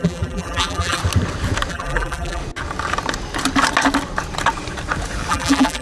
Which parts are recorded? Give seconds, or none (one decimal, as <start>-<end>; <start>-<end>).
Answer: 1.0-1.7; 2.4-5.3